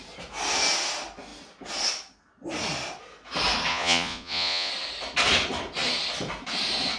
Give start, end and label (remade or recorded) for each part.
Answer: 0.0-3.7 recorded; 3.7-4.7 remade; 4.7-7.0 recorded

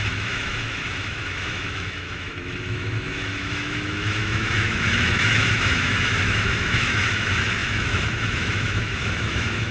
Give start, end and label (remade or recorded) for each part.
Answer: 0.0-9.7 remade

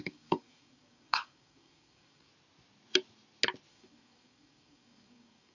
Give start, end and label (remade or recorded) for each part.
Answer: 0.0-2.3 remade; 2.3-3.7 recorded; 3.7-5.5 remade

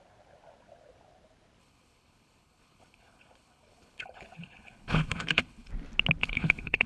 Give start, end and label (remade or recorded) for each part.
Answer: 0.0-1.6 recorded; 1.6-5.7 remade; 5.7-6.2 recorded; 6.2-6.9 remade